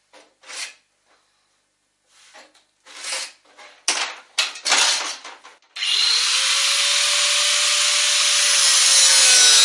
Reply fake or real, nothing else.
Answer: real